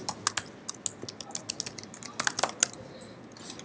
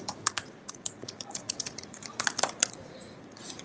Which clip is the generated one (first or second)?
second